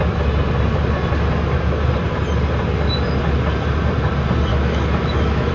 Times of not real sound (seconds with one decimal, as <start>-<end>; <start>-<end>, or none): 4.5-5.5